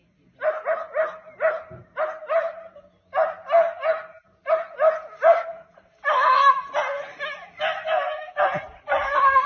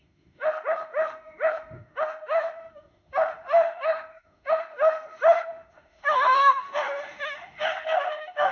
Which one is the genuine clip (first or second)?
first